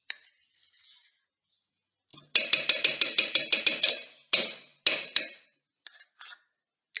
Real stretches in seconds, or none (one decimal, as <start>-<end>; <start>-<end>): 0.0-7.0